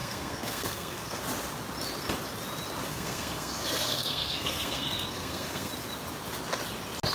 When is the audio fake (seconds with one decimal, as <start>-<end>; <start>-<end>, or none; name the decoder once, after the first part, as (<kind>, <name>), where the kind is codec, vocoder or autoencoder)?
0.0-1.2 (codec, SNAC); 2.9-5.7